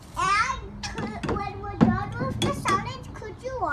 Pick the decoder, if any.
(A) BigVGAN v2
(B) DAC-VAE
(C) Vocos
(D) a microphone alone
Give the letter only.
D